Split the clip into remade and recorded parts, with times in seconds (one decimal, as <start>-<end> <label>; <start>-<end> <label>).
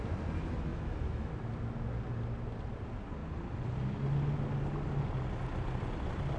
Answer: 0.0-0.7 recorded; 0.7-1.3 remade; 1.3-6.4 recorded